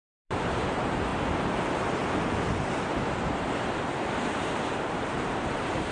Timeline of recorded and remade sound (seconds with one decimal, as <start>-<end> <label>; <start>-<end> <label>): 0.0-1.1 remade; 1.1-1.6 recorded; 1.6-2.0 remade; 2.0-5.0 recorded; 5.0-5.9 remade